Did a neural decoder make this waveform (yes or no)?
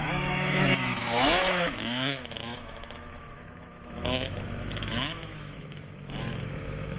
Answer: yes